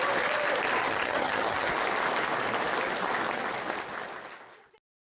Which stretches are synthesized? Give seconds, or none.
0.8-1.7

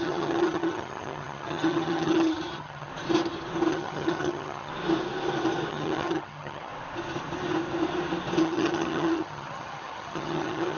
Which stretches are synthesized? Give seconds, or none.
0.0-2.9; 3.7-4.7; 5.7-6.7; 8.4-10.8

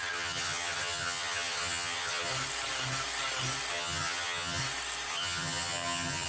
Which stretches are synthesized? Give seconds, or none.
0.0-2.3; 3.7-4.6; 5.1-6.3

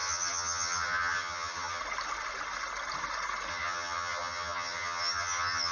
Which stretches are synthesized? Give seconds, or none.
0.0-1.8; 3.5-5.7

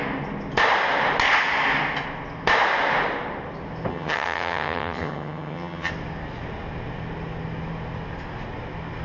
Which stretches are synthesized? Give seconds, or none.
3.9-5.9

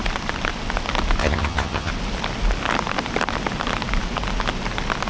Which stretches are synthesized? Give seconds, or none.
1.2-1.9